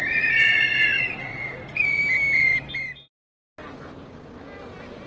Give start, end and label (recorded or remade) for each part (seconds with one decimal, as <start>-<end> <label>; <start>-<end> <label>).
0.0-2.0 remade; 2.0-5.1 recorded